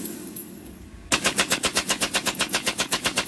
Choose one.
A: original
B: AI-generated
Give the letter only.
B